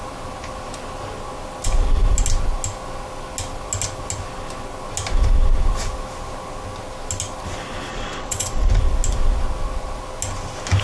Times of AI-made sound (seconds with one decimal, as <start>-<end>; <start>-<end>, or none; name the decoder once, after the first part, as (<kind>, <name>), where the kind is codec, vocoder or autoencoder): 7.9-8.7 (vocoder, WaveNeXt)